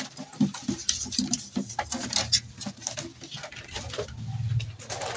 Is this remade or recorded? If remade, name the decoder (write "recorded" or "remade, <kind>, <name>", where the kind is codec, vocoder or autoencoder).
recorded